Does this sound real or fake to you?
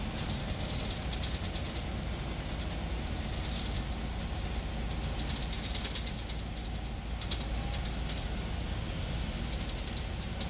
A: real